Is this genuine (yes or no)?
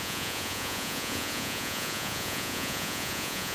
no